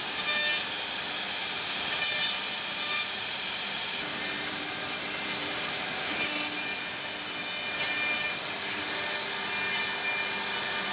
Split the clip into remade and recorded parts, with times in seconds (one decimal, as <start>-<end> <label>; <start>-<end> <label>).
0.0-1.4 recorded; 1.4-5.9 remade; 5.9-10.9 recorded